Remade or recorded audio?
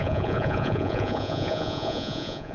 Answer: remade